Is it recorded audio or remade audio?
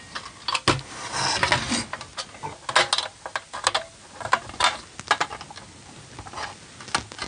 recorded